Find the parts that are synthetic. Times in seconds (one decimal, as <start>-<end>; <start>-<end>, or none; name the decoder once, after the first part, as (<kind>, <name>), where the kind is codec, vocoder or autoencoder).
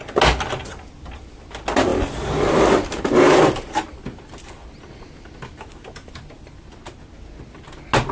none